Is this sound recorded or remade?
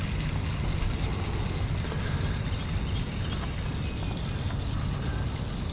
recorded